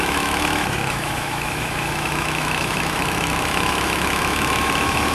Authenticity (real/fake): fake